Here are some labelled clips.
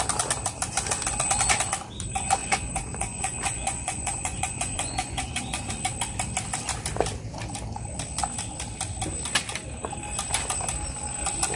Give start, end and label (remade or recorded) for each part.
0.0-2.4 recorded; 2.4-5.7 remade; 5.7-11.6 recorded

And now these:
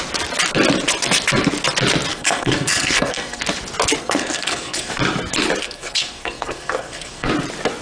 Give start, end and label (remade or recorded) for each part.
0.0-2.1 recorded; 2.1-3.4 remade; 3.4-4.0 recorded; 4.0-4.9 remade; 4.9-5.6 recorded; 5.6-7.3 remade; 7.3-7.8 recorded

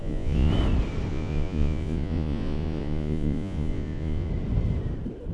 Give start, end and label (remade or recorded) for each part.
0.0-0.5 remade; 0.5-1.1 recorded; 1.1-4.3 remade; 4.3-5.3 recorded

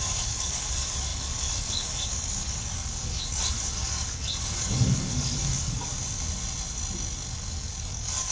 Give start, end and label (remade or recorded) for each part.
0.0-5.9 remade; 5.9-7.5 recorded; 7.5-8.3 remade